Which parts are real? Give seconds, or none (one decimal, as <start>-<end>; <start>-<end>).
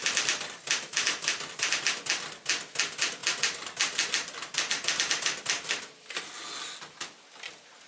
0.0-7.9